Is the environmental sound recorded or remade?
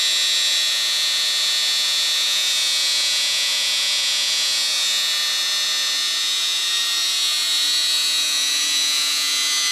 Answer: remade